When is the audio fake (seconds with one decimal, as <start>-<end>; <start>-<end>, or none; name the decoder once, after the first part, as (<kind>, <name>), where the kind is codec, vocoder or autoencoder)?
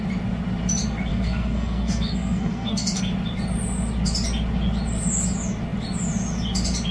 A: 1.1-3.0 (codec, SNAC)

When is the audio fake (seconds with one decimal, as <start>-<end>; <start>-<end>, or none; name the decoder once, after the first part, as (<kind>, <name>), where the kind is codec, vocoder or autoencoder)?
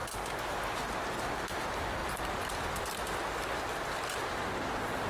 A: none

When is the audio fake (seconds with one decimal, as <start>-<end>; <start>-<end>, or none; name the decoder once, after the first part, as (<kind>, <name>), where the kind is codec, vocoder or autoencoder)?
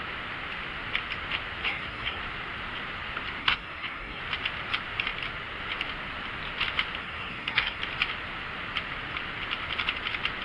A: 1.6-2.2 (codec, SNAC); 3.4-4.2; 7.0-7.8